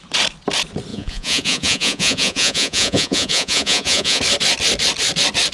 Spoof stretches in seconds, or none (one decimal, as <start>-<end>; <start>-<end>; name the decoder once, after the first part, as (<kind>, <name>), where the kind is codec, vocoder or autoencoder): 0.9-4.2 (vocoder, Vocos)